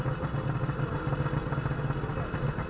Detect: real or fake real